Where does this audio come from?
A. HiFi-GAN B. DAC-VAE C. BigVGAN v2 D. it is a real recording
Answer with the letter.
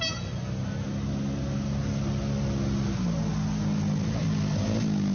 D